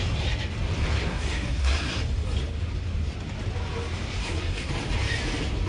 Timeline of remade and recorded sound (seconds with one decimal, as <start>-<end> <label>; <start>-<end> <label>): 0.0-1.1 recorded; 1.1-2.0 remade; 2.0-4.2 recorded; 4.2-4.7 remade; 4.7-5.7 recorded